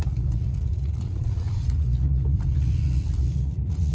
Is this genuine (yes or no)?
no